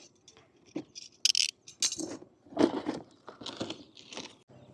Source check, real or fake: real